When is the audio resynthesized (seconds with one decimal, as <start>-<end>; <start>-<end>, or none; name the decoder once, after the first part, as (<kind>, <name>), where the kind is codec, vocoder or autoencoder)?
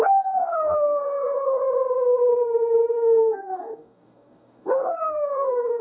0.0-1.6 (codec, DAC); 2.9-5.8